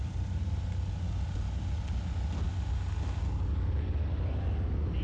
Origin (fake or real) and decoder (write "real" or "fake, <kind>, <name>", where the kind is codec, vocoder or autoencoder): real